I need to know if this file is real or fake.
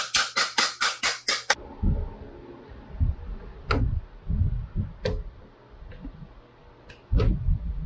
real